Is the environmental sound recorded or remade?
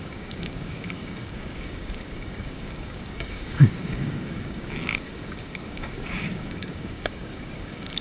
remade